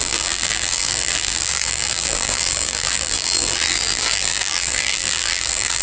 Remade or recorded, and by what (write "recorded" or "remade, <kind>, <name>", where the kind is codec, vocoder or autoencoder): remade, vocoder, BigVGAN v2